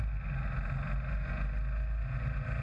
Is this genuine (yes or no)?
yes